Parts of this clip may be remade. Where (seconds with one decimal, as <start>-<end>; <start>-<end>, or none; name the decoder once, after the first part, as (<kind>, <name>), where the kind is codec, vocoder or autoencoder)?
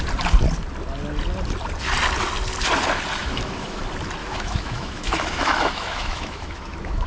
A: 3.2-3.8 (autoencoder, DAC-VAE); 4.2-7.1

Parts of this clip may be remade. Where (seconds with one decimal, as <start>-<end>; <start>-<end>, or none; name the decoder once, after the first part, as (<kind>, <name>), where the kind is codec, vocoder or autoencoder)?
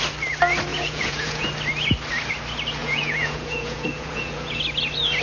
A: 0.7-1.5 (vocoder, Vocos); 2.8-4.6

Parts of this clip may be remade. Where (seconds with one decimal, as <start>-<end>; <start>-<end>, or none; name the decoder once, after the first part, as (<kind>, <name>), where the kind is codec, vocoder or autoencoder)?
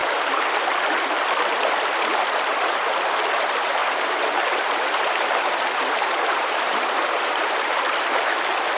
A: 0.0-0.8 (vocoder, BigVGAN v2); 3.8-7.8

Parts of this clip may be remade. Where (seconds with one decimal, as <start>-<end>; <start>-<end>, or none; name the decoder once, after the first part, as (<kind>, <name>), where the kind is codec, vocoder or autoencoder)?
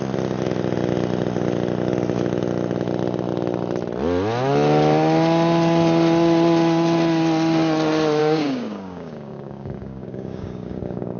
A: 8.2-11.2 (codec, DAC)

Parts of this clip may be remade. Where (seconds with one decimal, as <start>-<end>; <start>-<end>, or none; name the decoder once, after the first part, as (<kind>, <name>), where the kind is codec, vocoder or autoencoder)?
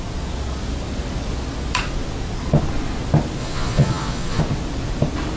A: 3.4-4.4 (vocoder, Vocos)